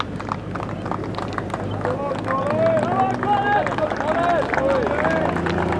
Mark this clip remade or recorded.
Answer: recorded